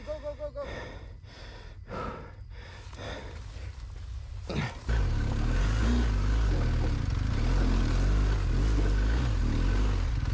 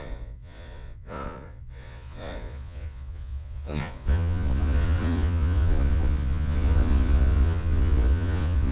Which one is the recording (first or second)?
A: first